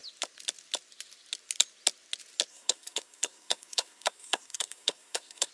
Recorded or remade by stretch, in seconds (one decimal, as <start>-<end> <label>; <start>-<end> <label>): 0.0-2.5 recorded; 2.5-5.5 remade